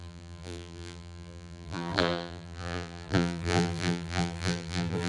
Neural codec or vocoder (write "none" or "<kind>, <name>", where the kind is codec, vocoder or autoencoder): vocoder, BigVGAN v2